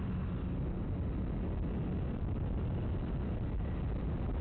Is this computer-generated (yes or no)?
no